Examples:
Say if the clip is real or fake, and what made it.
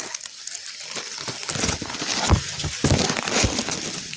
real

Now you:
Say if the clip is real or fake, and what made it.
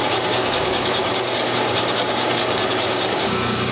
fake, codec, DAC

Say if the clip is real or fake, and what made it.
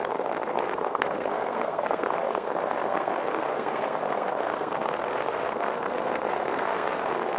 fake, codec, SNAC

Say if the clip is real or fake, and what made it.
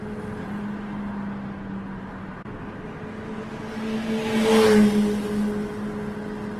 real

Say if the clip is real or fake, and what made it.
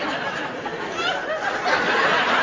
real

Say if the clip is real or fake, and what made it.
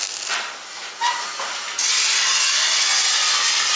real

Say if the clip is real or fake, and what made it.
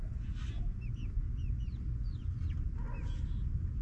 real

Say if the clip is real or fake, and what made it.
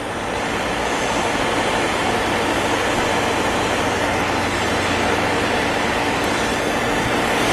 real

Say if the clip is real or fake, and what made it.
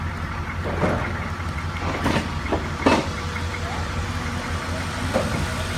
real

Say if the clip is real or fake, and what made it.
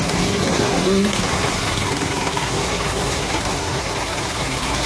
fake, codec, SNAC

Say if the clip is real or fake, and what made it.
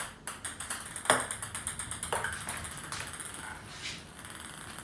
real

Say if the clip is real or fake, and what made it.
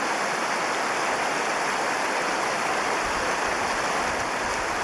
real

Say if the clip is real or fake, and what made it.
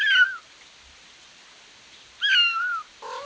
real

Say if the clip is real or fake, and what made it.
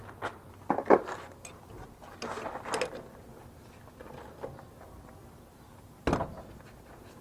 real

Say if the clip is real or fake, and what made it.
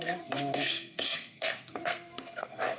fake, codec, SNAC